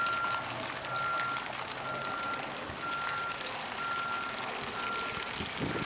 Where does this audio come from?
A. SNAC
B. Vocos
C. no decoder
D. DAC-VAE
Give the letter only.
C